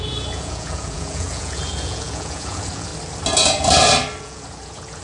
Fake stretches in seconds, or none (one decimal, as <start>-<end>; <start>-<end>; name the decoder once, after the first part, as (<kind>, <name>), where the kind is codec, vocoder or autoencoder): 0.0-2.9 (vocoder, Vocos); 4.2-5.0